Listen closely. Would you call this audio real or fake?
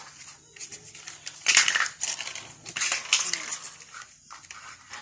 real